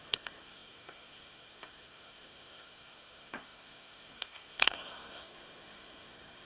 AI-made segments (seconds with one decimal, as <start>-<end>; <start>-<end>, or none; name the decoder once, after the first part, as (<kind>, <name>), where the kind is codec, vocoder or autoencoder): 0.0-6.5 (codec, SNAC)